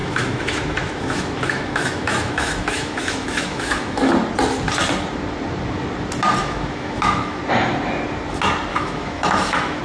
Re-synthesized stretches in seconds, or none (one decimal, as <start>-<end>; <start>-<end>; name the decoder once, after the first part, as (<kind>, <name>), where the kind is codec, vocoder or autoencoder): 0.0-4.1 (autoencoder, DAC-VAE); 6.4-7.4; 8.7-9.8